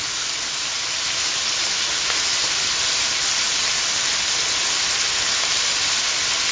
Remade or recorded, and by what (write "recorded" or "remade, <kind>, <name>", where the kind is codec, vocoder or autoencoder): recorded